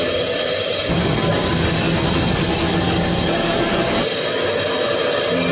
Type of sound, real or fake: real